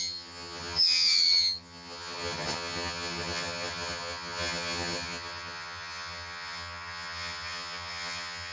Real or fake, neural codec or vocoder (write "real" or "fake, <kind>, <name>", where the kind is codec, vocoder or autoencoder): fake, vocoder, HiFi-GAN